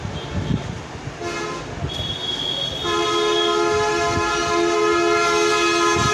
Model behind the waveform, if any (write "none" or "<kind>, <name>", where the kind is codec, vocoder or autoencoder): none